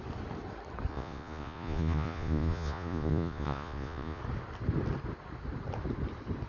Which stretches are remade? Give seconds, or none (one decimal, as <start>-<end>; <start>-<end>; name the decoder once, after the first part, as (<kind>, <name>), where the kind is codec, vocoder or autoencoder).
0.9-4.2 (vocoder, Vocos)